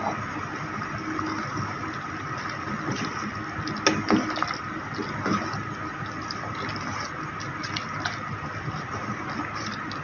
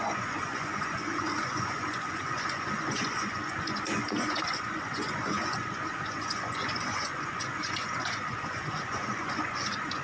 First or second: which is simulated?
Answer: second